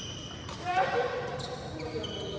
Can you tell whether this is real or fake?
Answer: real